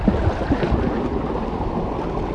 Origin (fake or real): real